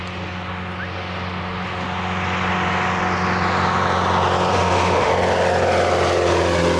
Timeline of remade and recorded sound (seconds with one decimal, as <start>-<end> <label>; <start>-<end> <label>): 0.0-4.5 recorded; 4.5-5.1 remade; 5.1-6.8 recorded